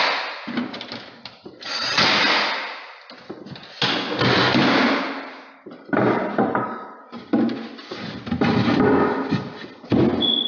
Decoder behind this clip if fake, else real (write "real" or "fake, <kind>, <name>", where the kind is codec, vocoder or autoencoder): real